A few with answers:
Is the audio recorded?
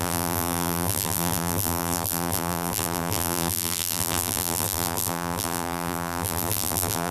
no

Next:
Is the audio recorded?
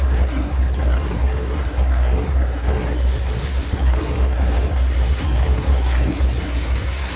no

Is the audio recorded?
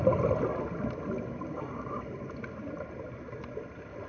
yes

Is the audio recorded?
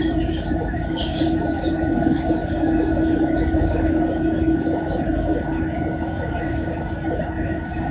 no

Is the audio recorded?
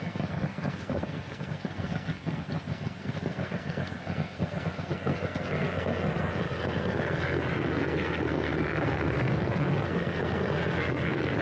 no